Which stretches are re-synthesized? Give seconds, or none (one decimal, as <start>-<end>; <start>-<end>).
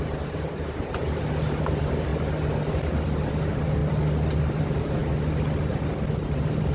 0.0-2.1; 3.4-3.8; 4.6-5.0; 5.7-6.7